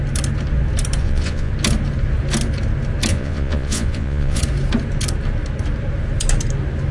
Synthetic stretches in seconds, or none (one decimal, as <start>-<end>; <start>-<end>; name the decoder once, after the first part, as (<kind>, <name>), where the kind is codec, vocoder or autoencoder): 1.0-1.5 (vocoder, Vocos); 3.1-4.4